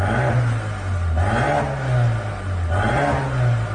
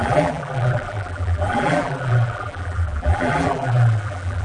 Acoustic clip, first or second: first